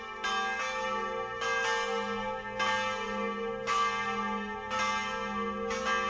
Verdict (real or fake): real